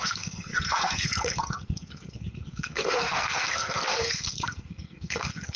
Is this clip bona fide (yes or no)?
no